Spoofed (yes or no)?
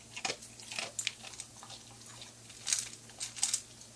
no